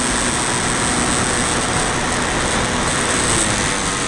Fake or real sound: real